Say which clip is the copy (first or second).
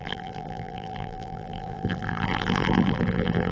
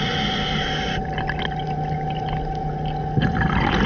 first